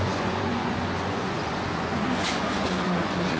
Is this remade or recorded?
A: remade